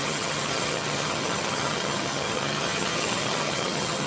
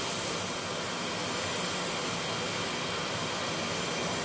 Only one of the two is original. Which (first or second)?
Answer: second